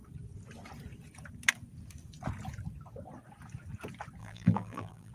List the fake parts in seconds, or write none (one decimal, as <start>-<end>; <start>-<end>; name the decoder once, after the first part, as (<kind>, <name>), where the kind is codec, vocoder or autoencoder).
4.2-5.1 (vocoder, BigVGAN v2)